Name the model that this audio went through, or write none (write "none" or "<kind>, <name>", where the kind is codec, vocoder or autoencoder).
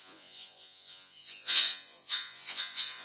vocoder, Vocos